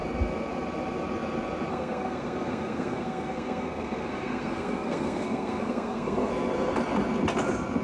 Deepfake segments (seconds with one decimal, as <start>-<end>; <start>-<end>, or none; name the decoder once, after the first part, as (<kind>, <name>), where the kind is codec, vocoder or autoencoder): 1.7-6.3 (codec, SNAC)